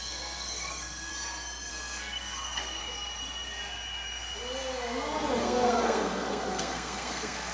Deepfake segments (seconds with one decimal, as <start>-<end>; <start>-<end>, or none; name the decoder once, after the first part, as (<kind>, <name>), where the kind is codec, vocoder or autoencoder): 0.0-1.1 (codec, SNAC); 1.7-2.8; 5.4-7.5